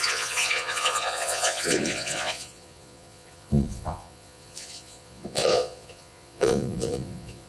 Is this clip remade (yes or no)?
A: yes